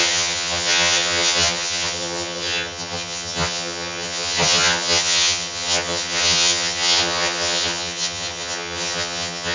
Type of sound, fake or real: fake